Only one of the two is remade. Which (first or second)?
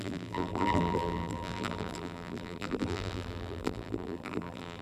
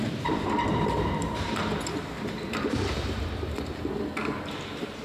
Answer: first